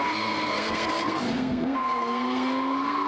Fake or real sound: fake